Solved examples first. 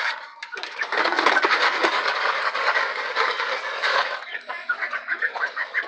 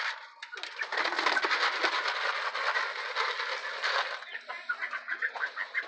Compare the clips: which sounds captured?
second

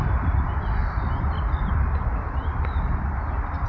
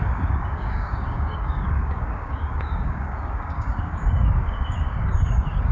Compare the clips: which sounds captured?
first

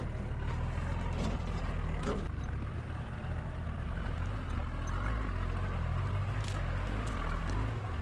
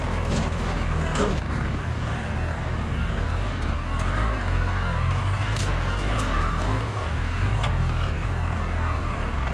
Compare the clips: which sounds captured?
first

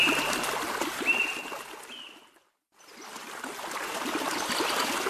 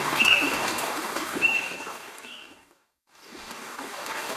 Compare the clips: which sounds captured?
first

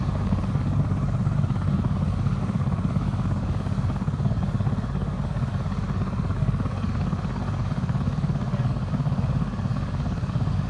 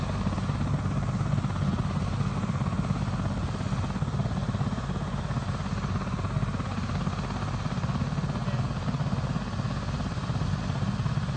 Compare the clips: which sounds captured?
second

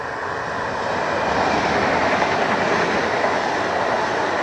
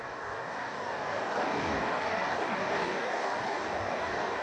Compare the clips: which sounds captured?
first